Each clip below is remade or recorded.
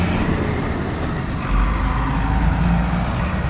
recorded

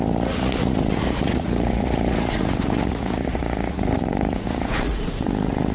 remade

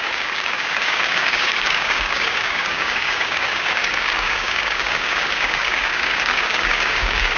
remade